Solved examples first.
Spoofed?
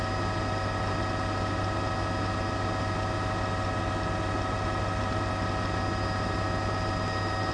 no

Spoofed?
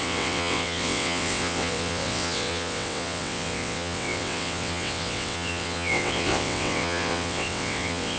yes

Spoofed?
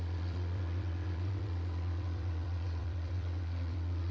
yes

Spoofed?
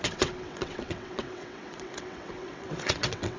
yes